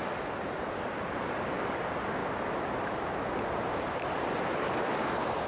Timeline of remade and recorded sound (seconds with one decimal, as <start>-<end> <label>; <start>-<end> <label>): 0.0-2.2 recorded; 2.2-5.5 remade